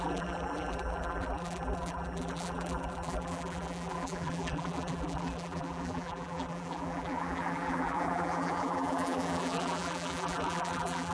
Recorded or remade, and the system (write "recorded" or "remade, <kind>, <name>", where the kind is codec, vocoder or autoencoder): remade, vocoder, BigVGAN v2